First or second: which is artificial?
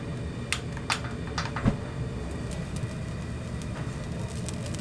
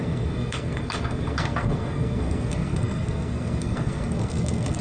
second